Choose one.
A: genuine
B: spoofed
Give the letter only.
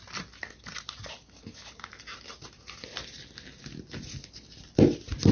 A